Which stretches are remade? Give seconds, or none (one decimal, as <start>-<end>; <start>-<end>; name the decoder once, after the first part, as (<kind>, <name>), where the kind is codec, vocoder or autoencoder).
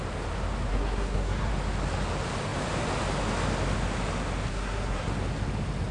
0.7-1.5 (codec, SNAC); 4.5-5.1